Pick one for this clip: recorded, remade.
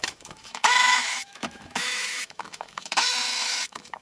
remade